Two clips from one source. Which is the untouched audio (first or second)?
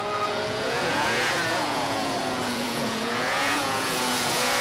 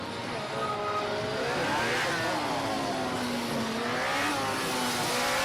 second